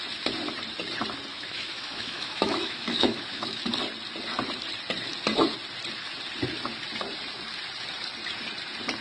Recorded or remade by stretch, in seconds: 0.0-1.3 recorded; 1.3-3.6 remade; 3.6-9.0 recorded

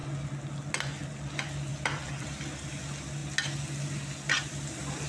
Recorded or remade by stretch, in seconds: 0.0-1.7 recorded; 1.7-2.4 remade; 2.4-5.1 recorded

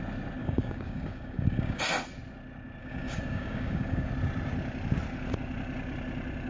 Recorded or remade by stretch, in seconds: 0.0-0.4 recorded; 0.4-1.8 remade; 1.8-2.8 recorded; 2.8-4.1 remade; 4.1-6.5 recorded

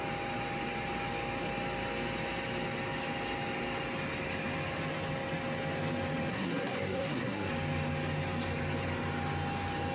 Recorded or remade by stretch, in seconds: 0.0-6.3 recorded; 6.3-7.5 remade; 7.5-9.9 recorded